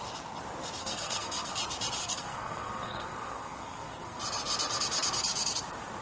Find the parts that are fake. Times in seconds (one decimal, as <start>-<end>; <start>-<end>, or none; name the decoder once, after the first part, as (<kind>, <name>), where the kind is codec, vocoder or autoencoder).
0.8-1.6 (codec, SNAC); 2.0-4.2